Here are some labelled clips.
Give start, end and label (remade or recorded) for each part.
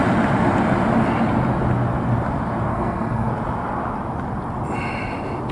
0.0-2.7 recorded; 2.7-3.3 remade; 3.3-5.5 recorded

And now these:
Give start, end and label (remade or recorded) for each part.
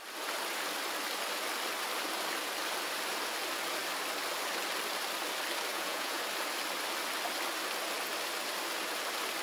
0.0-5.7 recorded; 5.7-6.2 remade; 6.2-9.4 recorded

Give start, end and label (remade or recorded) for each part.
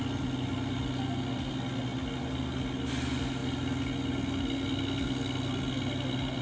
0.0-6.4 recorded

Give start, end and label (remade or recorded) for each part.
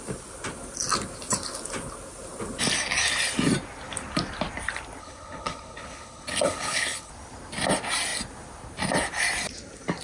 0.0-5.0 recorded; 5.0-7.1 remade; 7.1-10.0 recorded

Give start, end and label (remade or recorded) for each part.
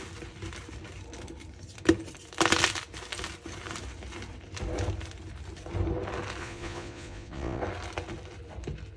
0.0-6.4 recorded; 6.4-7.6 remade; 7.6-9.0 recorded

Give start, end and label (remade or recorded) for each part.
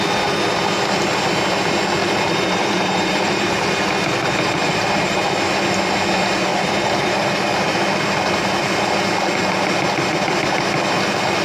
0.0-2.0 recorded; 2.0-5.5 remade; 5.5-6.5 recorded; 6.5-7.1 remade; 7.1-11.4 recorded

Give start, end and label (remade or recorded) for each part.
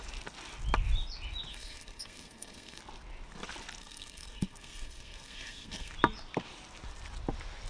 0.0-1.5 recorded; 1.5-2.8 remade; 2.8-3.8 recorded; 3.8-5.9 remade; 5.9-7.7 recorded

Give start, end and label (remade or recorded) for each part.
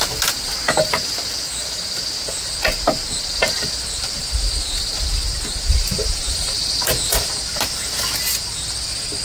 0.0-5.7 recorded; 5.7-7.3 remade; 7.3-9.2 recorded